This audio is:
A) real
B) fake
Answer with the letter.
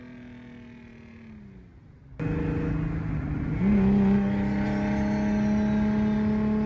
A